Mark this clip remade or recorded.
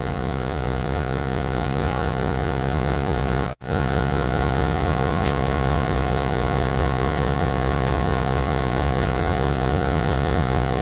remade